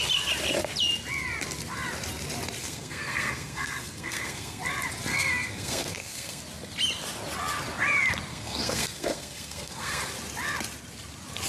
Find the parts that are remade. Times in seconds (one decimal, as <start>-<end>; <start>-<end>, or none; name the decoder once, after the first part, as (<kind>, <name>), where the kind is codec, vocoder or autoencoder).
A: 2.6-4.6 (codec, SNAC); 5.1-6.4; 8.3-10.0